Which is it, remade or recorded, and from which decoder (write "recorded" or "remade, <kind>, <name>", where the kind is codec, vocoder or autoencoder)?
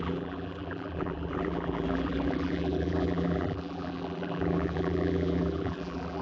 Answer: remade, vocoder, BigVGAN v2